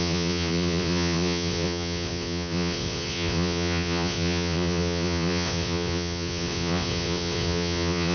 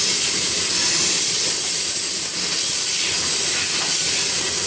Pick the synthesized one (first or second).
first